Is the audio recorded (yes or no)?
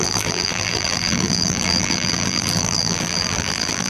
no